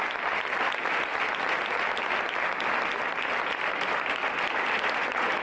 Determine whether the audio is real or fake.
real